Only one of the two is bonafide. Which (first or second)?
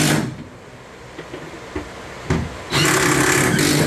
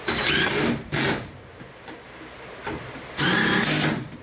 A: first